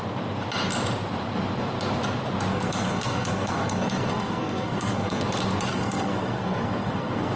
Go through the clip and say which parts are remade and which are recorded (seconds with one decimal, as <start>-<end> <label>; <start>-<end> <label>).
0.0-2.5 recorded; 2.5-5.2 remade; 5.2-5.7 recorded; 5.7-7.4 remade